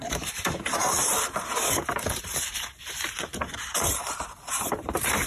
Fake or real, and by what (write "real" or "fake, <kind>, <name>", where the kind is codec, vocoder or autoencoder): fake, vocoder, BigVGAN v2